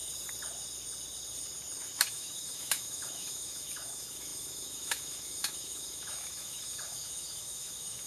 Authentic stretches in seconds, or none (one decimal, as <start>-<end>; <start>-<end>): 0.0-2.1